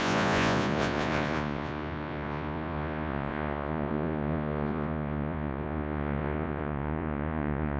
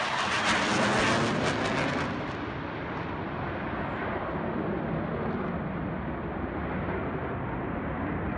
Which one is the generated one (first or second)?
first